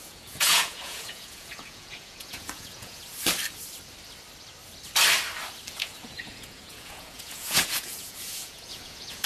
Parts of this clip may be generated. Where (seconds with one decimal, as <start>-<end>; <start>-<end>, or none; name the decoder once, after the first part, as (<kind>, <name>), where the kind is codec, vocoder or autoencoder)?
0.0-3.0 (vocoder, Vocos); 5.7-9.3